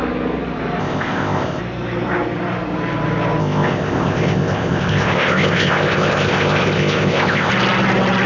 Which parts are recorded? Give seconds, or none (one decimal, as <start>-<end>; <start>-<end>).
0.0-0.8; 1.6-3.4; 7.5-8.3